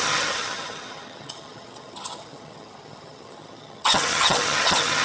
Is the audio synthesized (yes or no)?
yes